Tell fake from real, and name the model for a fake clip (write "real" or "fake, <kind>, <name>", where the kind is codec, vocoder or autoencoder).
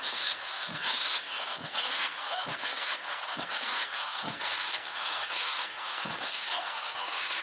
fake, codec, SNAC